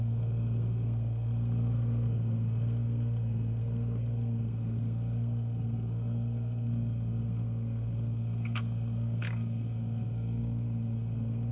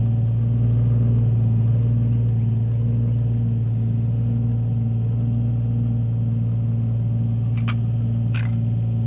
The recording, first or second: second